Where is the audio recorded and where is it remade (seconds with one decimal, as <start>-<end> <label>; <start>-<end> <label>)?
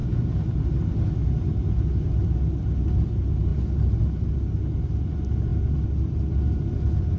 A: 0.0-7.2 recorded